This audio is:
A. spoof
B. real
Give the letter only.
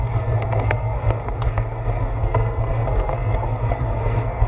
A